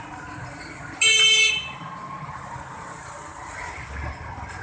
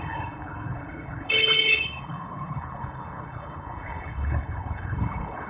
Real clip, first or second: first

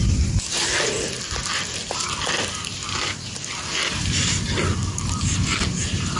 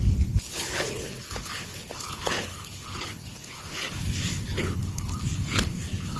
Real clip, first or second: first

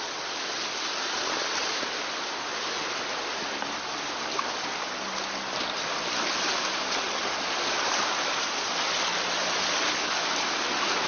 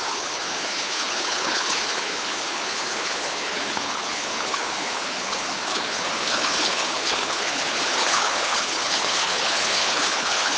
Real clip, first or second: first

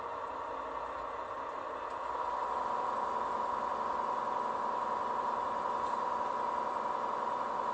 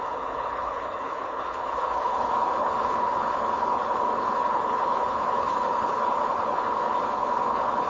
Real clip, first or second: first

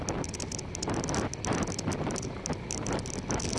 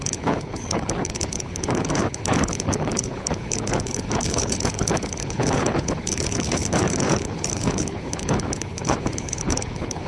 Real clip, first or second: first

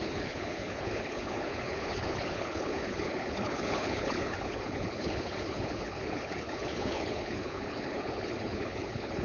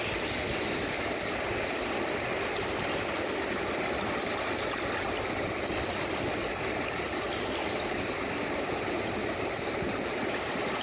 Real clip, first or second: second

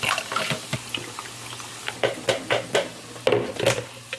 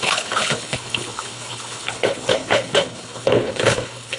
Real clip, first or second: first